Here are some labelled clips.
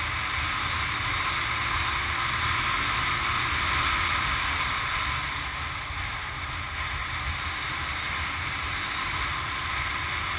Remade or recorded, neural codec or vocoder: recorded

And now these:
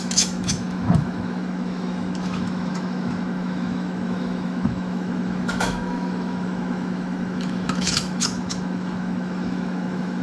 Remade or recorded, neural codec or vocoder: remade, autoencoder, DAC-VAE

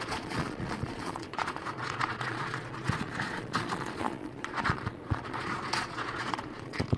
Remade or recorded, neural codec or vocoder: remade, vocoder, Vocos